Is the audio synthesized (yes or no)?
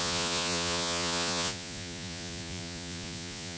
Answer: yes